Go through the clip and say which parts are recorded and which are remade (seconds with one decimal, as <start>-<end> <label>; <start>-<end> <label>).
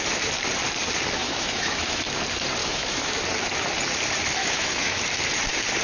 0.0-1.2 recorded; 1.2-2.0 remade; 2.0-2.6 recorded; 2.6-3.2 remade; 3.2-4.4 recorded; 4.4-5.0 remade; 5.0-5.8 recorded